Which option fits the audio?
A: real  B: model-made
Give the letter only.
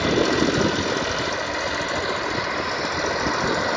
A